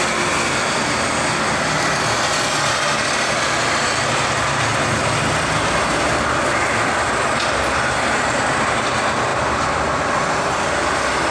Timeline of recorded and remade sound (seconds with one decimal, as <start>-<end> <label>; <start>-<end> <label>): 0.0-11.3 recorded